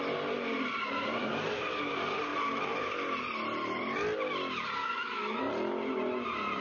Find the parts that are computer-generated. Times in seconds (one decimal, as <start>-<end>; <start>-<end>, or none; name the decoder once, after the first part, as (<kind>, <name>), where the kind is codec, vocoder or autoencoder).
4.8-5.4 (autoencoder, DAC-VAE)